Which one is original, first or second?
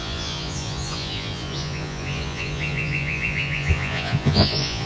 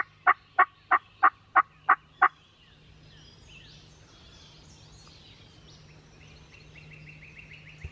second